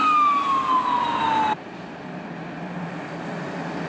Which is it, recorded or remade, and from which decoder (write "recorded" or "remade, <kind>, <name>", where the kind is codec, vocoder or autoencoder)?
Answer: recorded